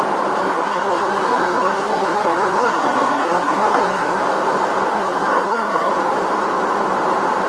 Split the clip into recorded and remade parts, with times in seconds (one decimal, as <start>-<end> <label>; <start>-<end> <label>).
0.0-0.4 recorded; 0.4-4.2 remade; 4.2-4.9 recorded; 4.9-5.9 remade; 5.9-7.5 recorded